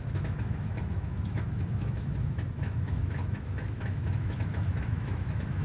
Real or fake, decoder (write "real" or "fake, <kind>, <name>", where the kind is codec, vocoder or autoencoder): fake, autoencoder, DAC-VAE